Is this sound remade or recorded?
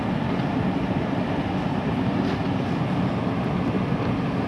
recorded